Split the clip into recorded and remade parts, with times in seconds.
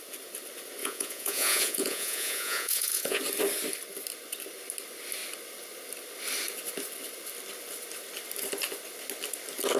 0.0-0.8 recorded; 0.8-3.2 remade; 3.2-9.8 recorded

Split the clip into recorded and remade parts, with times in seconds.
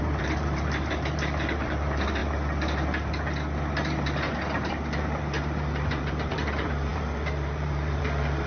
0.0-2.2 remade; 2.2-4.7 recorded; 4.7-8.5 remade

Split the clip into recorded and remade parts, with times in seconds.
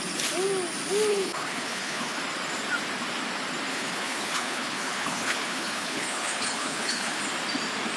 0.0-1.1 recorded; 1.1-2.2 remade; 2.2-3.7 recorded; 3.7-7.2 remade; 7.2-8.0 recorded